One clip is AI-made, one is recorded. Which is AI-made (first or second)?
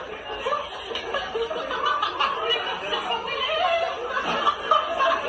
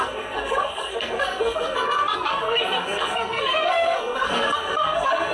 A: second